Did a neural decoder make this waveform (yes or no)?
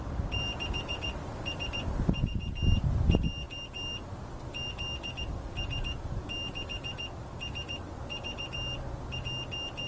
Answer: no